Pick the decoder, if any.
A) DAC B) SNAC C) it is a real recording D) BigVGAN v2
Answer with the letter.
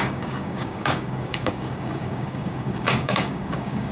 A